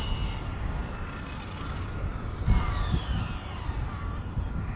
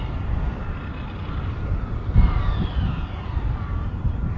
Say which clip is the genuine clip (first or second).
first